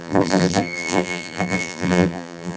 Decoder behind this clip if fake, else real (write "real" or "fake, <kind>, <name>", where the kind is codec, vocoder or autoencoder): fake, vocoder, BigVGAN v2